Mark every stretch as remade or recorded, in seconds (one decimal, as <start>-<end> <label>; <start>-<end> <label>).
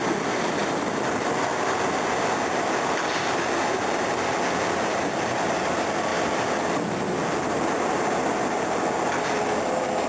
0.0-10.1 recorded